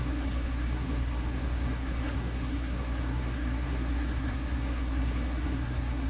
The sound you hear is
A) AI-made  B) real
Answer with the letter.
A